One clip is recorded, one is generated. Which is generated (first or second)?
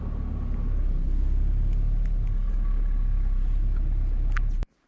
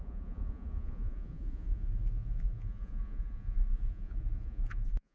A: second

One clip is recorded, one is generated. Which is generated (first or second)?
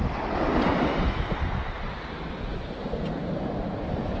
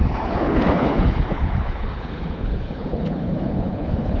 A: second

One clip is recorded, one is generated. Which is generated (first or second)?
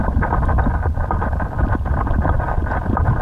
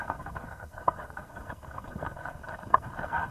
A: second